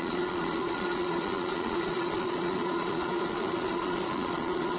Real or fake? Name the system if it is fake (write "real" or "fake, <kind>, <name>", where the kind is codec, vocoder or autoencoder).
fake, vocoder, Vocos